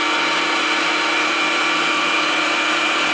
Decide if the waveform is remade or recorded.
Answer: recorded